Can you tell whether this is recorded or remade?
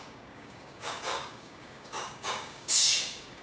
remade